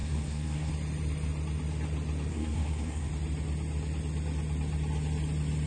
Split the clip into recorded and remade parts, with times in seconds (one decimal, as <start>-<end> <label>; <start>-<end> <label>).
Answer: 0.0-0.7 remade; 0.7-2.3 recorded; 2.3-3.1 remade; 3.1-5.7 recorded